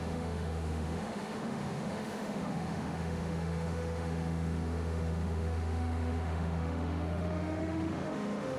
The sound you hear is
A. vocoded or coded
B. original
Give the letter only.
A